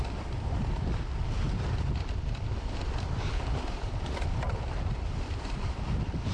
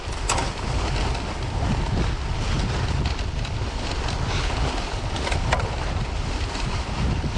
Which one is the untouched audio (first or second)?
second